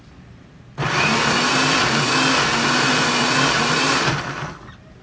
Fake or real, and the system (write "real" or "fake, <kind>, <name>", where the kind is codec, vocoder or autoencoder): real